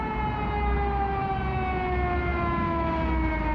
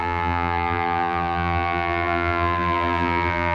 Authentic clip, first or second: first